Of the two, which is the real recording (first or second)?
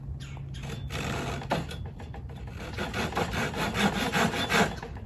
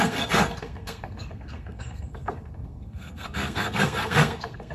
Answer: first